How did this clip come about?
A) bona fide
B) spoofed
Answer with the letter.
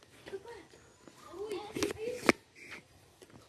A